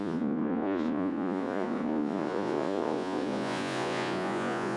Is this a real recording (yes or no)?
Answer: no